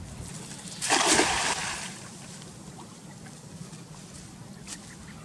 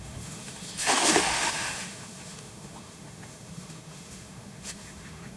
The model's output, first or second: second